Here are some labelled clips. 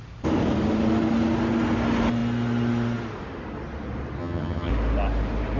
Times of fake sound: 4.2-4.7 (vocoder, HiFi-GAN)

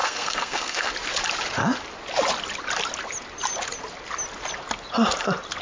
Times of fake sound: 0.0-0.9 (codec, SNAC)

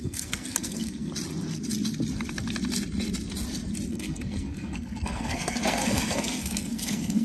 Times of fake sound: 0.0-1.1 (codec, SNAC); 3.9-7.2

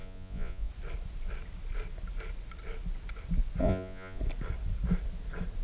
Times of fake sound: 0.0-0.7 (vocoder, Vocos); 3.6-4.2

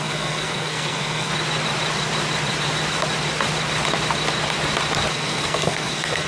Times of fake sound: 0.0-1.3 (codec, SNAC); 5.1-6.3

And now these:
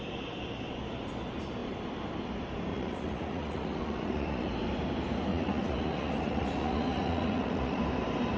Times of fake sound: 2.7-4.5 (vocoder, Vocos); 5.3-7.8

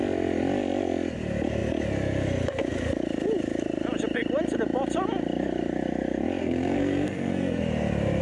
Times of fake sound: 6.4-7.6 (codec, SNAC)

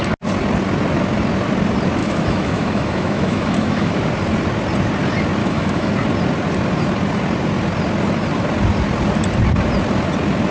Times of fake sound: 2.0-3.9 (autoencoder, DAC-VAE); 5.4-5.9